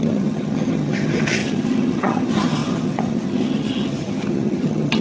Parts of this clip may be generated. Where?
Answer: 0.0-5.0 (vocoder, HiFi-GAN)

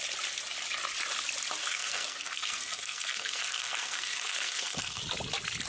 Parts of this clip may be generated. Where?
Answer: 1.6-5.0 (codec, SNAC)

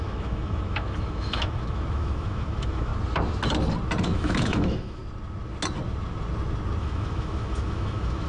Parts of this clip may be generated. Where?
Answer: 0.0-2.9 (autoencoder, DAC-VAE); 4.0-5.0; 6.8-8.3

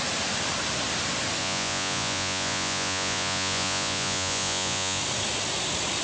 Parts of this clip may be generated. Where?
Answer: 1.4-5.0 (vocoder, Vocos)

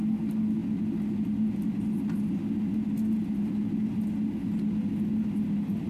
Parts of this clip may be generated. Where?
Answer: none

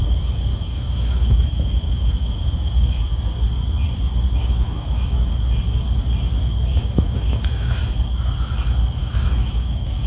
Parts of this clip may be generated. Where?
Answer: 0.5-3.0 (autoencoder, DAC-VAE); 4.4-5.3; 6.7-7.8; 9.0-10.1